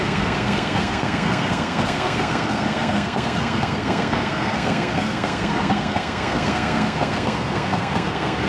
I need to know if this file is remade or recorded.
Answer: remade